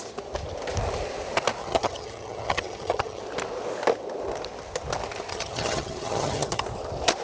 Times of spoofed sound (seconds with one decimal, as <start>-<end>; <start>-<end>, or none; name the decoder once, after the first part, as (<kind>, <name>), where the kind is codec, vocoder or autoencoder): 1.6-3.2 (vocoder, HiFi-GAN); 5.3-6.6